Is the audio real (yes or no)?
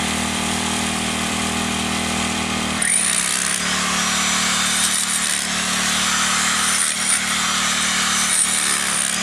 no